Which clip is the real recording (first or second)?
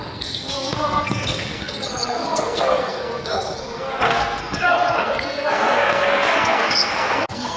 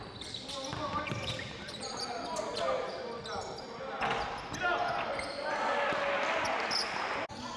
second